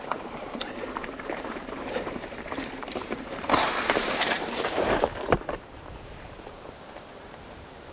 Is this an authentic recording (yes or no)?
no